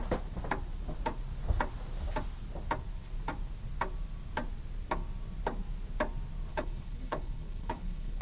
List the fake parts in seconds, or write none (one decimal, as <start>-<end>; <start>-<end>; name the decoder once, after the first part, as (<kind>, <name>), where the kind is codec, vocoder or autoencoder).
6.5-8.2 (codec, HILCodec)